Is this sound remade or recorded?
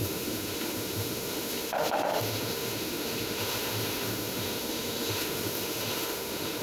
remade